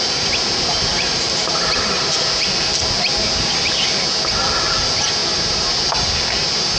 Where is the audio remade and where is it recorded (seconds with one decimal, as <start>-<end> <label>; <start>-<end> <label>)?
0.0-0.9 recorded; 0.9-2.1 remade; 2.1-6.8 recorded